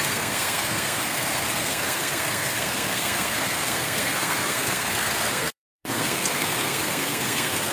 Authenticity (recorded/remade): remade